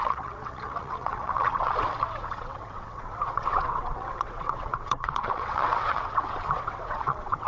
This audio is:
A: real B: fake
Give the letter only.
B